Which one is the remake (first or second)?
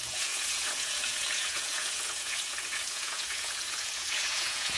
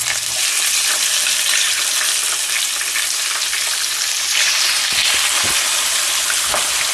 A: first